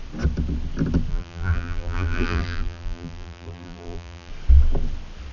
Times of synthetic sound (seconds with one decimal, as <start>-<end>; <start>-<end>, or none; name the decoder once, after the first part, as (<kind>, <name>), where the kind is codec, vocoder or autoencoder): 1.1-4.3 (vocoder, BigVGAN v2)